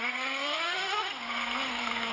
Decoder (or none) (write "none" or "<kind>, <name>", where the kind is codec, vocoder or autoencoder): codec, SNAC